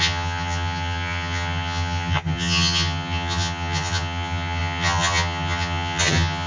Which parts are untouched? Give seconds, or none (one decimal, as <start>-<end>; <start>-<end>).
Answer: none